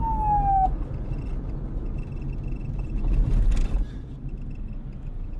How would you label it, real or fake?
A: real